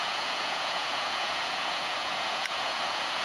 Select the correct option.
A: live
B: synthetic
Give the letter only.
B